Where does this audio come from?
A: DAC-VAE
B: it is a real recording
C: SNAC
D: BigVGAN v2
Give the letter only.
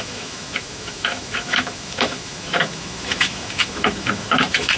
A